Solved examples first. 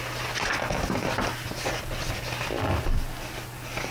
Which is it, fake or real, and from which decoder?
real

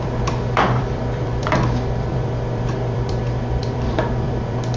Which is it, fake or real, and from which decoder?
fake, vocoder, BigVGAN v2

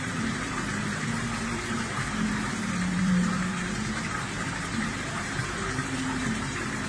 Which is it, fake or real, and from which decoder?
fake, vocoder, BigVGAN v2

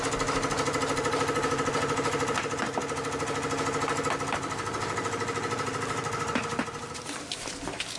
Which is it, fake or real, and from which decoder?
real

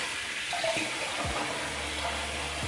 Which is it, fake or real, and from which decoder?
real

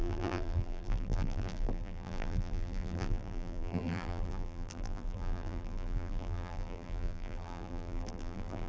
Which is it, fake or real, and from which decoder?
fake, vocoder, BigVGAN v2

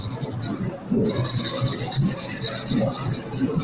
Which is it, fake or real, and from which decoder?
fake, vocoder, BigVGAN v2